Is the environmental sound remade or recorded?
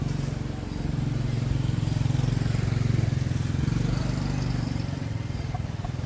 recorded